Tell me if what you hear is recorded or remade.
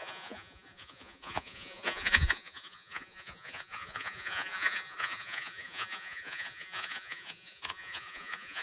remade